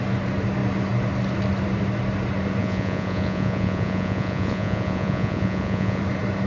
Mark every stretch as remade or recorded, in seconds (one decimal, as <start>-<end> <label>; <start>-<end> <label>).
0.0-2.6 recorded; 2.6-6.0 remade; 6.0-6.5 recorded

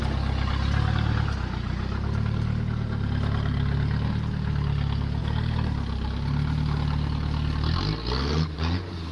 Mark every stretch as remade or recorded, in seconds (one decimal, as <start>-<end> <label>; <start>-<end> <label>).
0.0-9.1 recorded

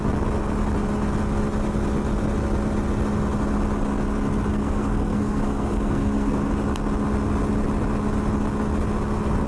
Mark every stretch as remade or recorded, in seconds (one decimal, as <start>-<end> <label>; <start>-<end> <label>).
0.0-4.5 recorded; 4.5-6.5 remade; 6.5-9.5 recorded

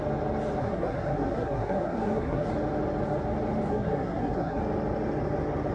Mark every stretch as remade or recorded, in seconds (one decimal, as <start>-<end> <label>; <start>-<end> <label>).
0.0-0.6 recorded; 0.6-2.5 remade; 2.5-3.7 recorded; 3.7-4.6 remade; 4.6-5.7 recorded

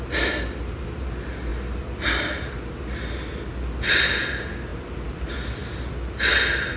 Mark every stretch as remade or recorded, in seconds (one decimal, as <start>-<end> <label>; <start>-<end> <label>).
0.0-6.8 recorded